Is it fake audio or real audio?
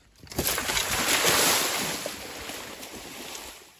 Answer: real